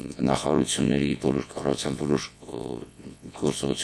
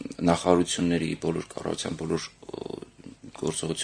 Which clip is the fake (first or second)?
first